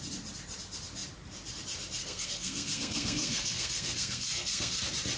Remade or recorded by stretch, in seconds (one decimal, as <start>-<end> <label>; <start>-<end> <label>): 0.0-2.0 recorded; 2.0-4.8 remade; 4.8-5.2 recorded